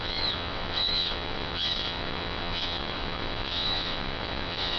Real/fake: fake